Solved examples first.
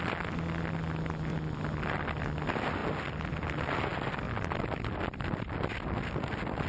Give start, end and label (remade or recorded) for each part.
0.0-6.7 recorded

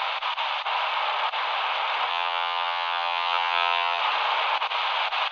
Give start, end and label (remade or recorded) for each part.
0.0-2.1 recorded; 2.1-4.0 remade; 4.0-5.3 recorded

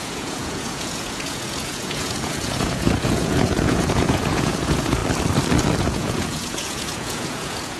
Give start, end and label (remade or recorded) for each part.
0.0-5.0 remade; 5.0-5.8 recorded; 5.8-7.8 remade

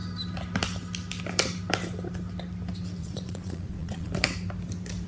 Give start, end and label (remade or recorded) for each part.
0.0-3.0 recorded; 3.0-4.1 remade; 4.1-5.1 recorded

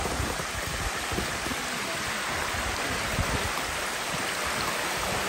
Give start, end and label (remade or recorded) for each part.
0.0-0.7 recorded; 0.7-3.9 remade; 3.9-5.3 recorded

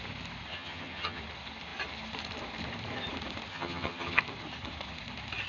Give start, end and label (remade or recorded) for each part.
0.0-0.5 recorded; 0.5-1.2 remade; 1.2-3.5 recorded; 3.5-4.2 remade; 4.2-5.5 recorded

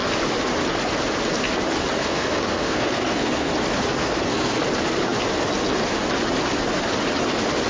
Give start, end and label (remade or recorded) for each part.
0.0-2.0 recorded; 2.0-3.5 remade; 3.5-4.0 recorded; 4.0-4.6 remade; 4.6-7.7 recorded

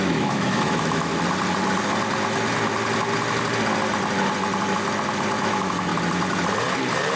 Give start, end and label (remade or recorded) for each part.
0.0-1.1 remade; 1.1-5.4 recorded; 5.4-5.9 remade; 5.9-7.2 recorded